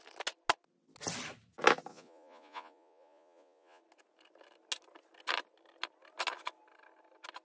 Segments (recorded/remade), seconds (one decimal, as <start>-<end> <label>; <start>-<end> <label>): 0.0-1.9 recorded; 1.9-3.8 remade; 3.8-7.4 recorded